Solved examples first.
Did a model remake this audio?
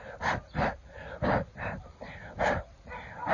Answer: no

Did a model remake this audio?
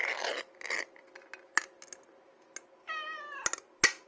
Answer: no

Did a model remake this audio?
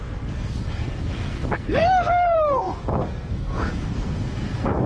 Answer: yes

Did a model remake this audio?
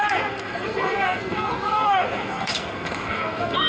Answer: yes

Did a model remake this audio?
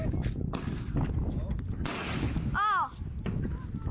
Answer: no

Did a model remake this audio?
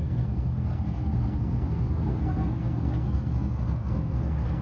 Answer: yes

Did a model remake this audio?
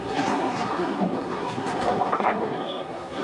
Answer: yes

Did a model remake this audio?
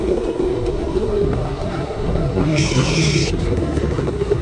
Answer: yes